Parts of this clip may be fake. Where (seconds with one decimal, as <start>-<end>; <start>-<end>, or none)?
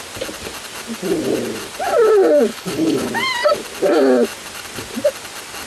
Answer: 2.5-3.1